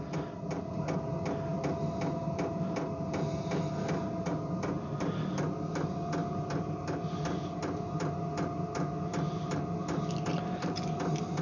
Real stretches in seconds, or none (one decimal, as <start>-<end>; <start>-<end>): 0.0-11.4